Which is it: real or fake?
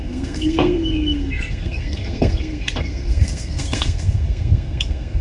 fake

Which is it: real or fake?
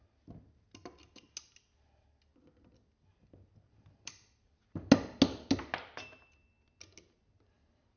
real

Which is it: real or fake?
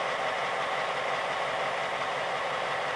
real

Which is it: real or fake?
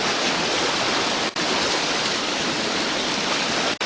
real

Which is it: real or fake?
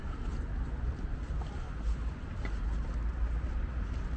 real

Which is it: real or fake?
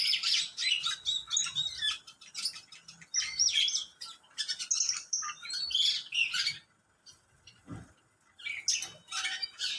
real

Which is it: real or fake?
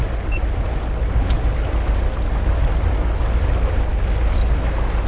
real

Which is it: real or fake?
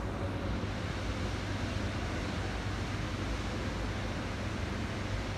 real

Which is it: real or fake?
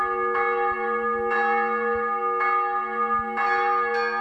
real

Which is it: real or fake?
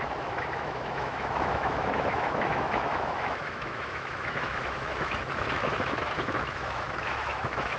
fake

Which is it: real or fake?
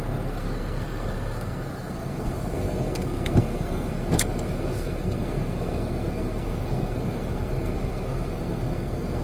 fake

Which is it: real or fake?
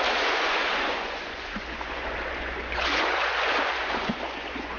fake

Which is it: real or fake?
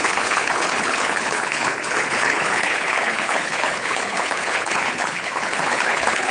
fake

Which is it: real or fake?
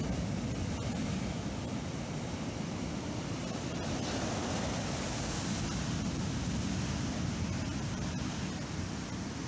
real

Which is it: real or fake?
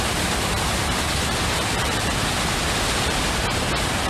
fake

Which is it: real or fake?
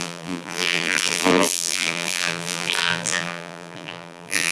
fake